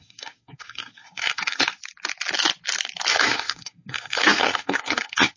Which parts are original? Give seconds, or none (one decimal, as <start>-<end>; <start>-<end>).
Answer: 1.8-3.1